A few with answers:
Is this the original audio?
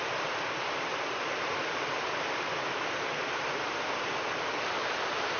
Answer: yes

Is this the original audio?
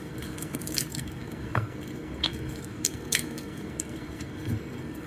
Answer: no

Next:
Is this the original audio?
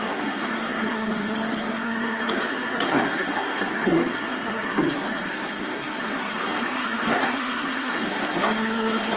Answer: no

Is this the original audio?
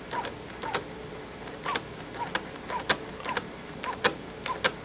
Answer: yes